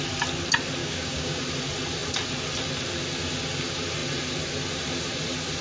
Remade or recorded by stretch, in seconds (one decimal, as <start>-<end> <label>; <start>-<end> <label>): 0.0-0.8 recorded; 0.8-1.4 remade; 1.4-5.6 recorded